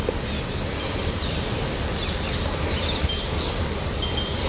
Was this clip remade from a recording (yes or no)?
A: no